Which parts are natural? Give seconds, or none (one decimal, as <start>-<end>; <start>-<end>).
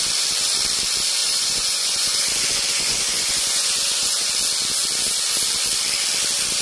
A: 0.0-1.2; 4.3-6.6